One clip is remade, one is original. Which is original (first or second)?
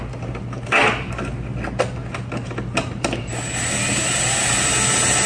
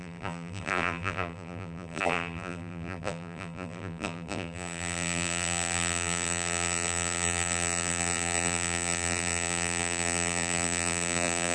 first